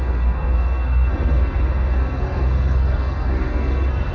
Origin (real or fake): fake